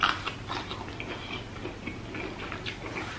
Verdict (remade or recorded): recorded